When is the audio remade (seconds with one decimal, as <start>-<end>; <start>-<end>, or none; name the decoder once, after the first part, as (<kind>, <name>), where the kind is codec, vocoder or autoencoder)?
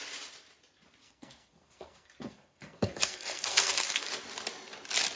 1.0-4.1 (codec, SNAC)